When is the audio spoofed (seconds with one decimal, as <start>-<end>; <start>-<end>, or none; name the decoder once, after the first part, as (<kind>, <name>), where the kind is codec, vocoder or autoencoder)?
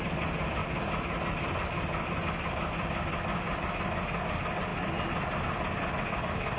none